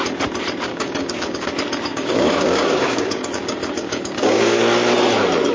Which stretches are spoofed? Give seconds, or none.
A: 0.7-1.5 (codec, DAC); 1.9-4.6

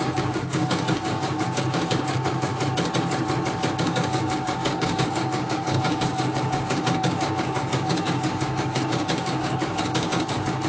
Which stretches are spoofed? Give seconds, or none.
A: 0.0-2.5 (codec, DAC); 3.7-10.7

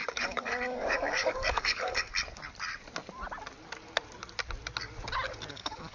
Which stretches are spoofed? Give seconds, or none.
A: 0.0-2.1 (codec, DAC); 5.5-5.9

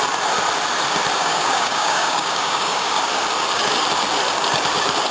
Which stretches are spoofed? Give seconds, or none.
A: 1.2-3.1 (codec, DAC)

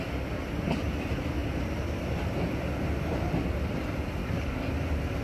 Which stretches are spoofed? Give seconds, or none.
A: 4.2-4.7 (codec, DAC)

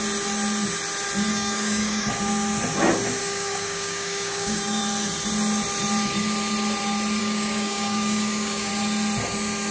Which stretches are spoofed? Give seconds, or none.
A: 1.3-2.1 (codec, DAC); 3.2-4.8; 7.2-8.7

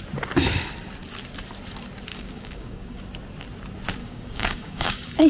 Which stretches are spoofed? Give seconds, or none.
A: 2.1-3.0 (codec, DAC); 4.0-5.3

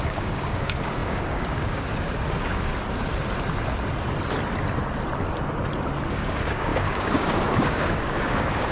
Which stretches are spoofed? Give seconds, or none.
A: 0.0-2.7 (codec, DAC); 6.1-8.7